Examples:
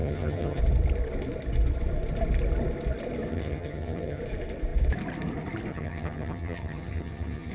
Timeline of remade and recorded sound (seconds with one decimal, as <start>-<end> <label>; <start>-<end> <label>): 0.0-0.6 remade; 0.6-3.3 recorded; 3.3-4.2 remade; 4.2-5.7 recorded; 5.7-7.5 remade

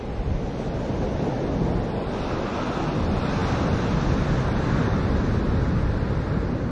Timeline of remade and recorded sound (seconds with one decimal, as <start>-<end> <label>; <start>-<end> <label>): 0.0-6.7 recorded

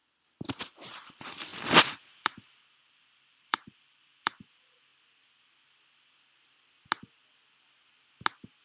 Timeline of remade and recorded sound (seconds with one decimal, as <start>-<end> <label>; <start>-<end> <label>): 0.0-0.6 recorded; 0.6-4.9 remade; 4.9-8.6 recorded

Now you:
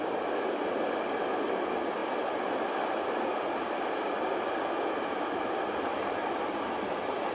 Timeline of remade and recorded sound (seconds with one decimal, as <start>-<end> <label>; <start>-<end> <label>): 0.0-2.0 recorded; 2.0-3.9 remade; 3.9-7.3 recorded

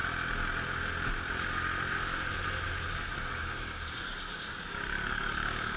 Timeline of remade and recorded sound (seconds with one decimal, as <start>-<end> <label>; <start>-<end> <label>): 0.0-3.4 recorded; 3.4-5.8 remade